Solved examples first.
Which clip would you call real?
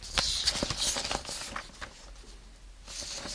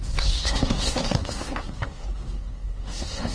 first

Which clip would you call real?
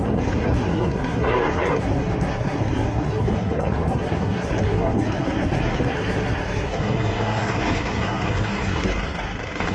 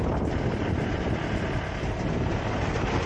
second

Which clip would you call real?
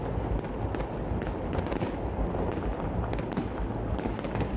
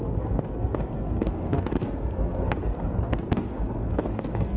first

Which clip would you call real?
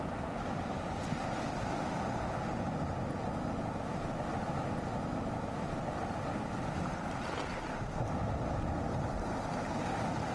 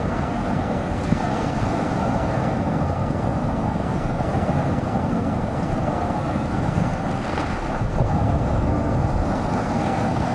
first